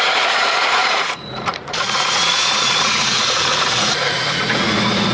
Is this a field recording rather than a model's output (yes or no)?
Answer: no